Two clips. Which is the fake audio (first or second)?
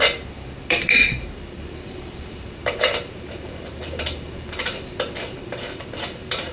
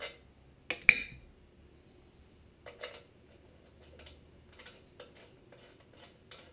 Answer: first